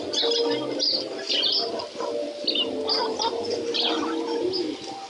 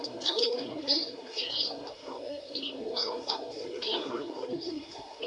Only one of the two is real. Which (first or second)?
first